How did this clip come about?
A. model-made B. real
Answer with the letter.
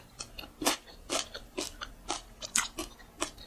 B